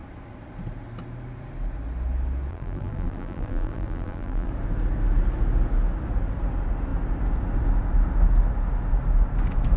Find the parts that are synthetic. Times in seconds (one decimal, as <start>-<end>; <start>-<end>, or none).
2.5-4.5